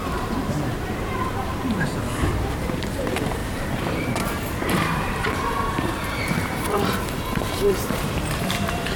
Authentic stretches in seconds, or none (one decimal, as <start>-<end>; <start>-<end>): none